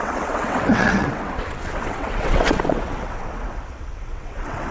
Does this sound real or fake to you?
fake